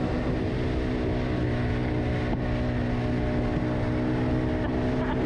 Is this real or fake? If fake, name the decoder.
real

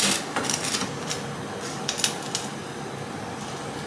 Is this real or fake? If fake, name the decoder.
real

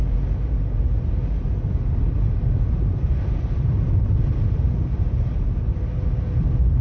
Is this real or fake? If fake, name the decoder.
real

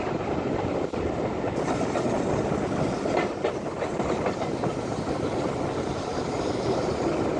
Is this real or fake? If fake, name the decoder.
real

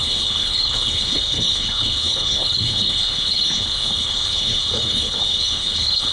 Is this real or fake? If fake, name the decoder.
fake, codec, HILCodec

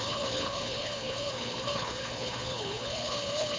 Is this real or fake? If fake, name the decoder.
fake, codec, HILCodec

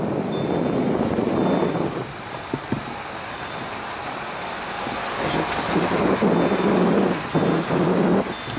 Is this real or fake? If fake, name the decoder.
real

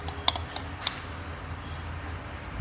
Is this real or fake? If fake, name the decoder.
real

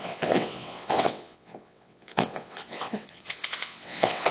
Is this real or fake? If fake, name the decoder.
fake, vocoder, WaveNeXt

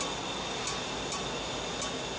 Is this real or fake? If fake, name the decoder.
real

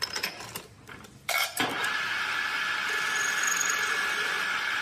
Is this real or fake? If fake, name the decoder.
fake, vocoder, BigVGAN v2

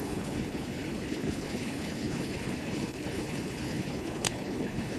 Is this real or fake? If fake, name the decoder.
fake, codec, HILCodec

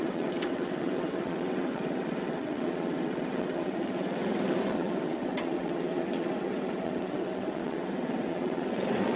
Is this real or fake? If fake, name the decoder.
fake, vocoder, WaveNeXt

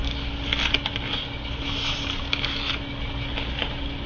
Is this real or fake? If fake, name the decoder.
real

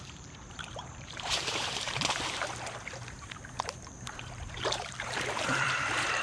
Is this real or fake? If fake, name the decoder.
fake, vocoder, BigVGAN v2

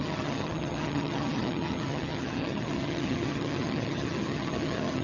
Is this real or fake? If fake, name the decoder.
fake, vocoder, HiFi-GAN